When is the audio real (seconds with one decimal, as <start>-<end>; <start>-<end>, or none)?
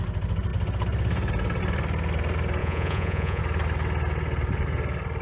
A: 0.0-2.6; 3.4-5.2